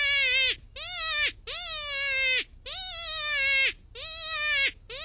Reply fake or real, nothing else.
real